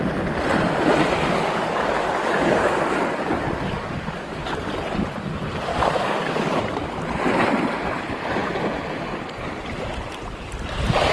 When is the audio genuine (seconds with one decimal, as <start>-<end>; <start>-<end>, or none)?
0.0-1.3; 4.4-5.7; 6.6-11.1